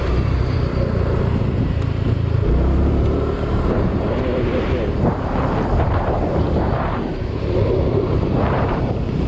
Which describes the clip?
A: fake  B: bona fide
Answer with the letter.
A